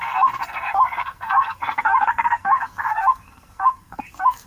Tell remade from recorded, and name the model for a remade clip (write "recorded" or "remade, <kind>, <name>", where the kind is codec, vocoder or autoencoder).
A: remade, codec, SNAC